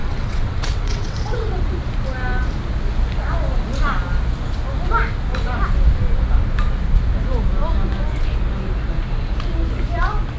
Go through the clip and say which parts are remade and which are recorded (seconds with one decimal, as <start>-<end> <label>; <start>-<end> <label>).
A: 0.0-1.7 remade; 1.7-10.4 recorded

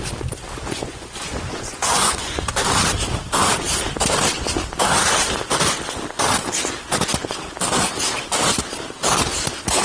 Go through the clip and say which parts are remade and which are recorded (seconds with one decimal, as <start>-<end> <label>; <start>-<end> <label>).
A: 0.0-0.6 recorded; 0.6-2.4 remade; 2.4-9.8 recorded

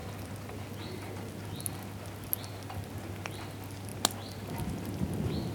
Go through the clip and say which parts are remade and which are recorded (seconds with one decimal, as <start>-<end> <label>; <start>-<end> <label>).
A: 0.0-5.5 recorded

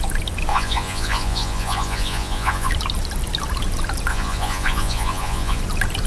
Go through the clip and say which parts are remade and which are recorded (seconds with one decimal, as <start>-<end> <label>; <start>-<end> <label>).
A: 0.0-0.5 recorded; 0.5-2.7 remade; 2.7-4.1 recorded; 4.1-5.6 remade; 5.6-6.1 recorded

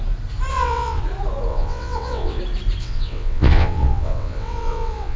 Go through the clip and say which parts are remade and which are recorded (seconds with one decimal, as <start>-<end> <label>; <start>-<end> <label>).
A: 0.0-0.5 recorded; 0.5-1.0 remade; 1.0-1.5 recorded; 1.5-2.4 remade; 2.4-2.8 recorded; 2.8-5.2 remade

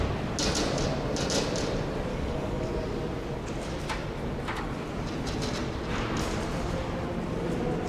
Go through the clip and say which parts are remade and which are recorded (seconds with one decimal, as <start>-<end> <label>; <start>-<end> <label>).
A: 0.0-2.1 recorded; 2.1-2.7 remade; 2.7-7.9 recorded

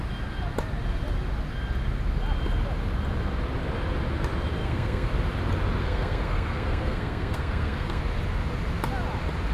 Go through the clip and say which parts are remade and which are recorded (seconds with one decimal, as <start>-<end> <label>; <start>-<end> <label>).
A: 0.0-4.6 recorded; 4.6-5.1 remade; 5.1-5.8 recorded; 5.8-8.0 remade; 8.0-9.5 recorded